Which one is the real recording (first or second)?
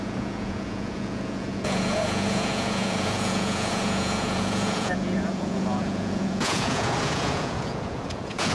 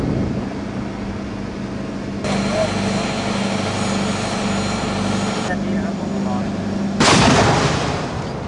second